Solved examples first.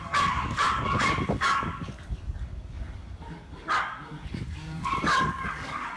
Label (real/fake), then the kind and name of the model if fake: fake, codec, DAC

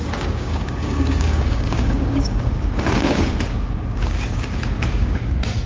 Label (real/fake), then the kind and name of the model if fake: fake, codec, DAC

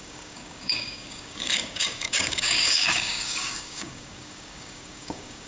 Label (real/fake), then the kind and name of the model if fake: fake, codec, DAC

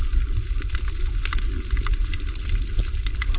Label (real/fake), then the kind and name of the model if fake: real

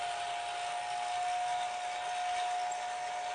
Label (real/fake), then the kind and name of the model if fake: real